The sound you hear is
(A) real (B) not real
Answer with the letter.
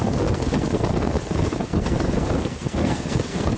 B